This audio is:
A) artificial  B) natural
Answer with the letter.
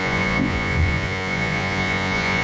A